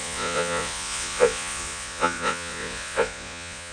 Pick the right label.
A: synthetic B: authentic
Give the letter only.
A